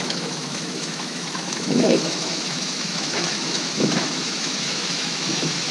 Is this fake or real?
fake